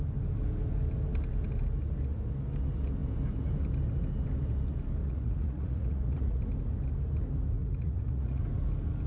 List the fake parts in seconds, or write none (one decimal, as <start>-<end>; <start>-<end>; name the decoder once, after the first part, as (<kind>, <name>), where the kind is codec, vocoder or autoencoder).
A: 5.0-6.4 (vocoder, Vocos); 7.6-8.4